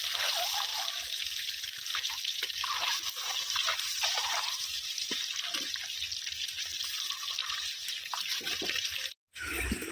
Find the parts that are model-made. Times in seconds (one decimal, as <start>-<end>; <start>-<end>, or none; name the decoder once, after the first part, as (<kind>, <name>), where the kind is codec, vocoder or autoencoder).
0.7-2.1 (vocoder, BigVGAN v2); 3.7-5.3; 7.4-9.9

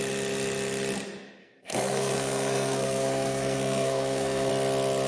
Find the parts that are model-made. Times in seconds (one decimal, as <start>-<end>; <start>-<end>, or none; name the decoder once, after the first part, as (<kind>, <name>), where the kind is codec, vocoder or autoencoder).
1.4-4.5 (codec, SNAC)

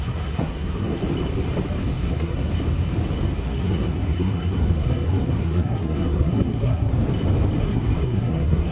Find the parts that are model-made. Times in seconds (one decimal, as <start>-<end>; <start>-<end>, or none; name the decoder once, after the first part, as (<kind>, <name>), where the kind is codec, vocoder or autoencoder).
0.0-1.0 (codec, SNAC); 2.0-2.5; 3.4-6.9; 7.6-8.7

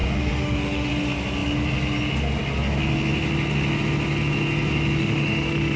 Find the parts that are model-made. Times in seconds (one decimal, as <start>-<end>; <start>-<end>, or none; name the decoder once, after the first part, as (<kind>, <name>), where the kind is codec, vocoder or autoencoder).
0.0-0.9 (autoencoder, DAC-VAE); 5.0-5.8

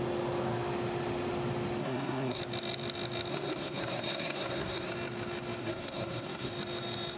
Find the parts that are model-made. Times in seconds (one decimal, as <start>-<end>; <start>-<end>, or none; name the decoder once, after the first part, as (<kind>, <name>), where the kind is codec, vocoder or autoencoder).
1.8-2.4 (codec, SNAC); 3.3-4.9; 5.6-6.5

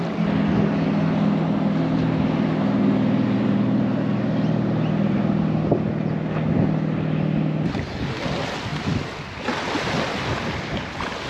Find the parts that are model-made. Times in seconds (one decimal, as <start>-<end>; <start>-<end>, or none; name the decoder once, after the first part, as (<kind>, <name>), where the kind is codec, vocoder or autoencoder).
none

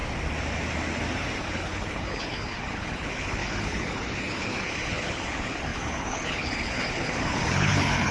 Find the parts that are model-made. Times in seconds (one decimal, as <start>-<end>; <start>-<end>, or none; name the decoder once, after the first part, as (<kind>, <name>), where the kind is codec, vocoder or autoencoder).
1.4-8.1 (codec, HILCodec)